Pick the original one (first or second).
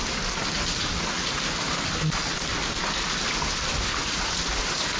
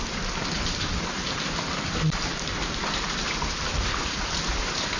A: first